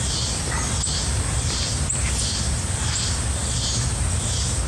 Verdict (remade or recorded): recorded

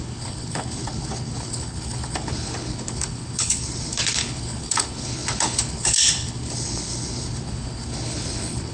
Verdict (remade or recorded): remade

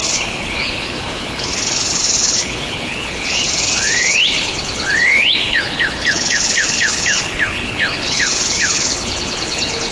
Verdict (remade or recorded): remade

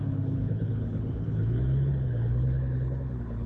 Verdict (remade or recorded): remade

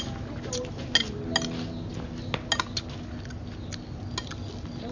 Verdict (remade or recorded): recorded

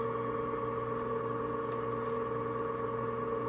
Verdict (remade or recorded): recorded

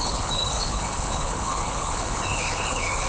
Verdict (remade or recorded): remade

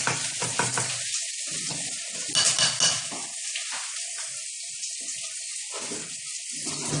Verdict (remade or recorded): recorded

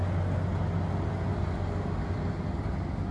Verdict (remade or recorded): recorded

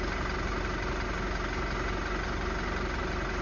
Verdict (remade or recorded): recorded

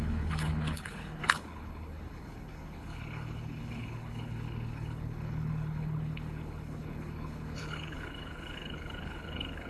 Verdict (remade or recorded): remade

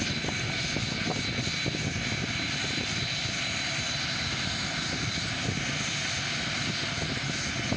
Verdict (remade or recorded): recorded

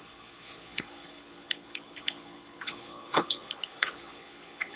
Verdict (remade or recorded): remade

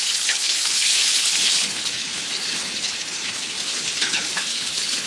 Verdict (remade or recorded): remade